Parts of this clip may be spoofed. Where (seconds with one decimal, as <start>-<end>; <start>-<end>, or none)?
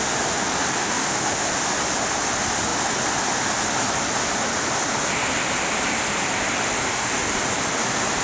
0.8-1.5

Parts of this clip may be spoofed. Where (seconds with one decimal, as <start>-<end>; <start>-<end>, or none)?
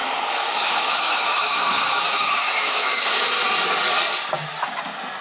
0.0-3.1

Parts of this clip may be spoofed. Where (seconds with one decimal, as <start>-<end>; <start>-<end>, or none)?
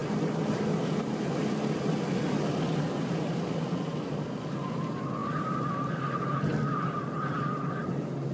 none